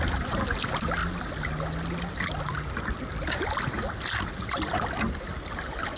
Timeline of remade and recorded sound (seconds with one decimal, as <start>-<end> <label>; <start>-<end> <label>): 0.0-6.0 recorded